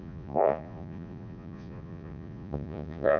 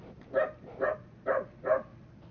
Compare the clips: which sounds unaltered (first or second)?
second